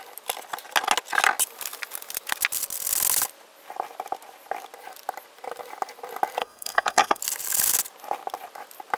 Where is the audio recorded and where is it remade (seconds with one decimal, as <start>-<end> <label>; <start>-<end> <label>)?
0.0-6.4 recorded; 6.4-7.2 remade; 7.2-9.0 recorded